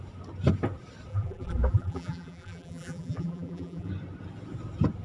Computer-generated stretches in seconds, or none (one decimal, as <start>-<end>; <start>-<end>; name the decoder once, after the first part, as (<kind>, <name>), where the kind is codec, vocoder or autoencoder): 1.1-3.9 (vocoder, BigVGAN v2)